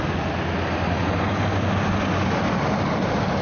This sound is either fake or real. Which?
real